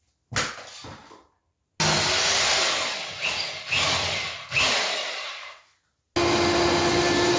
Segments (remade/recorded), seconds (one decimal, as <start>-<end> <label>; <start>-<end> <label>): 0.0-7.4 recorded

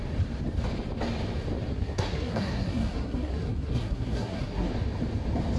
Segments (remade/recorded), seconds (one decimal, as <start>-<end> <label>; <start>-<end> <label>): 0.0-1.7 recorded; 1.7-4.7 remade; 4.7-5.6 recorded

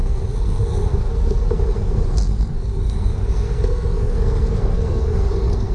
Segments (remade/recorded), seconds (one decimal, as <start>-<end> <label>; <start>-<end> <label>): 0.0-5.7 remade

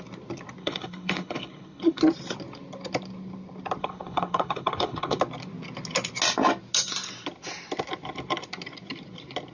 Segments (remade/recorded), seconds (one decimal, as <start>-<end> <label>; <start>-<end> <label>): 0.0-0.6 recorded; 0.6-2.0 remade; 2.0-3.8 recorded; 3.8-5.2 remade; 5.2-9.5 recorded